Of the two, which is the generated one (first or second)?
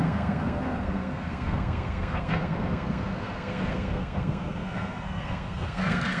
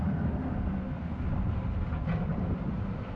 first